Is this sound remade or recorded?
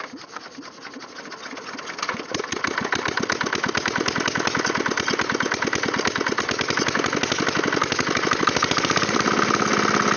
recorded